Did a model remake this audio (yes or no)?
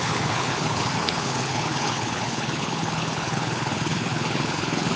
yes